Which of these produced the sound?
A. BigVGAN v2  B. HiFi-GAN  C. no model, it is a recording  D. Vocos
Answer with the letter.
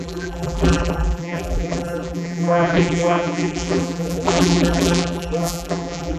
A